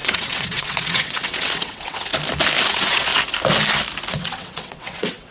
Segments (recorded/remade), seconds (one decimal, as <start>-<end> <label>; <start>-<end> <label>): 0.0-2.1 remade; 2.1-2.7 recorded; 2.7-3.1 remade; 3.1-4.1 recorded; 4.1-5.3 remade